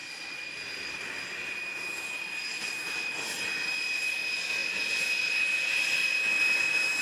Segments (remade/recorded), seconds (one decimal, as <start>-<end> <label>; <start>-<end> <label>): 0.0-7.0 recorded

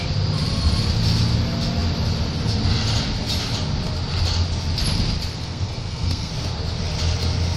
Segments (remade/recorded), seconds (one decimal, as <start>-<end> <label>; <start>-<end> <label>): 0.0-5.3 recorded; 5.3-6.3 remade; 6.3-7.6 recorded

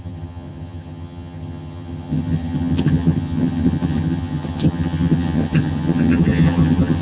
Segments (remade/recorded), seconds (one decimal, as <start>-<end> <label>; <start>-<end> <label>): 0.0-7.0 remade